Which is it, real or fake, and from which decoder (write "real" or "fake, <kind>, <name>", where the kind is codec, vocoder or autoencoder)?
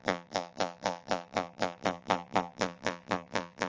fake, vocoder, BigVGAN v2